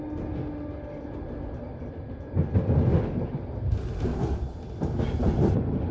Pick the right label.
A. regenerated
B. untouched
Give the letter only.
B